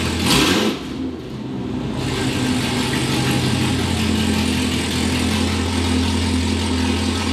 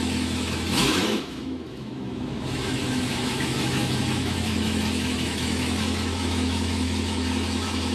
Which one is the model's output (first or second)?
second